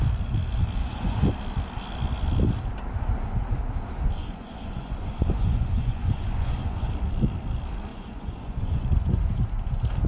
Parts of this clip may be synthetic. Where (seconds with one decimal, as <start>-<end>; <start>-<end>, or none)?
0.8-1.3; 4.2-6.9; 7.9-9.7